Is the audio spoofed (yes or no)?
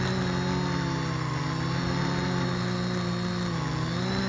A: no